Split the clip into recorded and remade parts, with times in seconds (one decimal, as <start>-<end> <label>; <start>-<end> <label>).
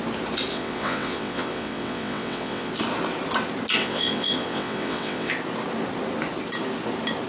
0.0-0.5 recorded; 0.5-2.7 remade; 2.7-3.8 recorded; 3.8-5.3 remade; 5.3-7.3 recorded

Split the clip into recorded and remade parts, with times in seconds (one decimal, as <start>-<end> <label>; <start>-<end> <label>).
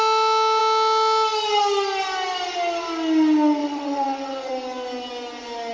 0.0-3.6 recorded; 3.6-4.5 remade; 4.5-5.7 recorded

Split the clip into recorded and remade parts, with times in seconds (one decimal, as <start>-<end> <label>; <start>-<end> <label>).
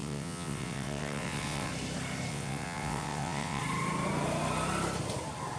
0.0-1.7 remade; 1.7-2.3 recorded; 2.3-3.6 remade; 3.6-5.6 recorded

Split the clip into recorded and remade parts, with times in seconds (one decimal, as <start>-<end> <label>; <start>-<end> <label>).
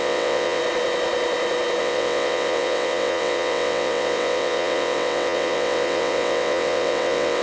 0.0-0.6 remade; 0.6-1.8 recorded; 1.8-7.4 remade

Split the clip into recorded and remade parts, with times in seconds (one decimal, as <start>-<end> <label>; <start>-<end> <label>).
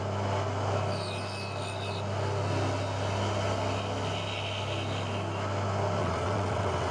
0.0-6.0 recorded; 6.0-6.9 remade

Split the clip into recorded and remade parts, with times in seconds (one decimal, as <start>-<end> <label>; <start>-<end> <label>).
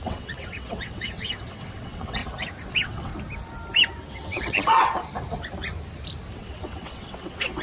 0.0-2.2 remade; 2.2-2.7 recorded; 2.7-3.1 remade; 3.1-4.1 recorded; 4.1-5.0 remade; 5.0-6.3 recorded; 6.3-7.6 remade